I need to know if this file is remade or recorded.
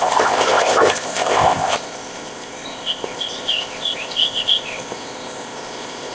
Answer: remade